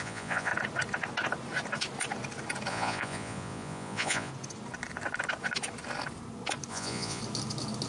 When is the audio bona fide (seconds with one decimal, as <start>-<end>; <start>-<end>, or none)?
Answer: 0.5-2.7; 4.3-6.7; 7.2-7.9